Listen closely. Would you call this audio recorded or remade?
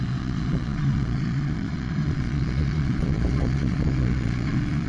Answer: remade